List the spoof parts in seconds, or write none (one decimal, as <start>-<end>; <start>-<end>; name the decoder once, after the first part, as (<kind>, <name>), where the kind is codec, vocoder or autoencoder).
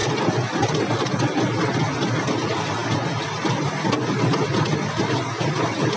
none